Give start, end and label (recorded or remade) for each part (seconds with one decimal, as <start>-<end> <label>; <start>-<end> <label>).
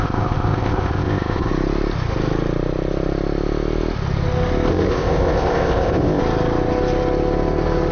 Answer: 0.0-1.5 remade; 1.5-4.7 recorded; 4.7-6.2 remade; 6.2-7.9 recorded